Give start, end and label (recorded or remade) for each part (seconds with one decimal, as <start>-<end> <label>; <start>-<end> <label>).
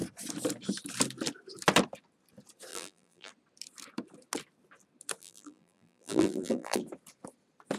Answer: 0.0-2.7 recorded; 2.7-3.3 remade; 3.3-5.2 recorded; 5.2-6.8 remade; 6.8-7.8 recorded